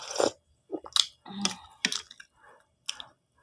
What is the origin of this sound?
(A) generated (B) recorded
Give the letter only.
B